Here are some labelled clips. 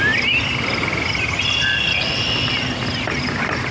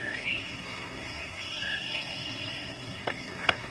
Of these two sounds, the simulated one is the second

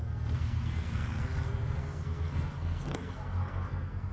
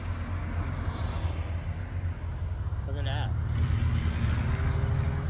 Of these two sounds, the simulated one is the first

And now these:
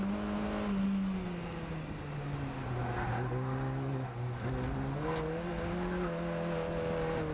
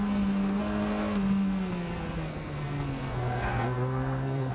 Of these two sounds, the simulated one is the second